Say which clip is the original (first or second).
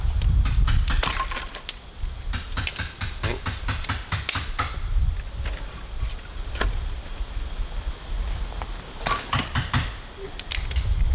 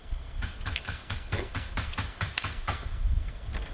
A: first